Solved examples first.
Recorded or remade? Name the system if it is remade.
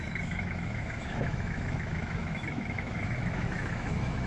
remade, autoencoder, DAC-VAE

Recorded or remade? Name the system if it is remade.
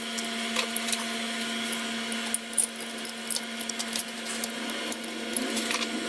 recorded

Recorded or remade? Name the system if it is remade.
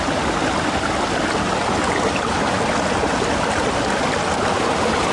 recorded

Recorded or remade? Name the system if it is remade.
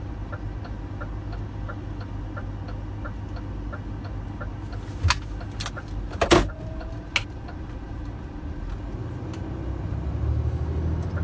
recorded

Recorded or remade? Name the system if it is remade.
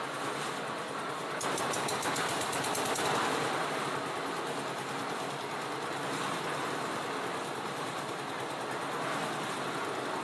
recorded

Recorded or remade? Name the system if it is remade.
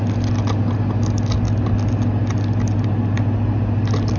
recorded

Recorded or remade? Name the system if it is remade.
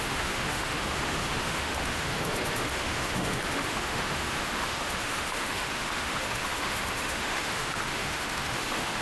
remade, autoencoder, DAC-VAE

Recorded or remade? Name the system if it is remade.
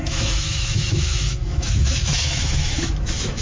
remade, autoencoder, DAC-VAE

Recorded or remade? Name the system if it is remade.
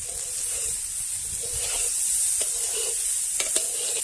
recorded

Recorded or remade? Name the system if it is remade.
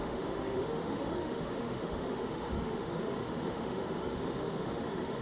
remade, autoencoder, DAC-VAE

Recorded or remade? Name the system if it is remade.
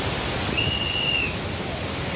recorded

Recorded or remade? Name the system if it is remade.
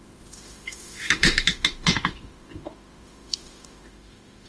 remade, autoencoder, DAC-VAE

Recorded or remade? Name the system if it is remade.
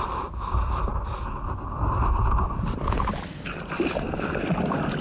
recorded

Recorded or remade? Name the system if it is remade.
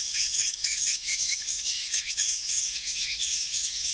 remade, autoencoder, DAC-VAE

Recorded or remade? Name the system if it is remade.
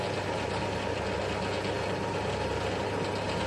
recorded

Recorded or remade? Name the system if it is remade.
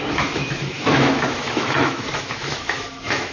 remade, autoencoder, DAC-VAE